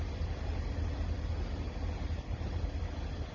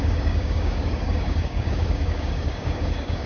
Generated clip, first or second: second